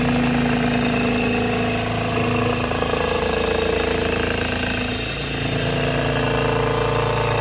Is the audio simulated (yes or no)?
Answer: no